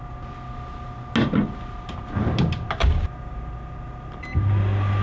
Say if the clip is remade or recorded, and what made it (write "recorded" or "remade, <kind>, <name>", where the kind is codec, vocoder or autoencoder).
recorded